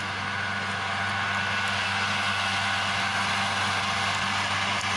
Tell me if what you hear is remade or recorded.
recorded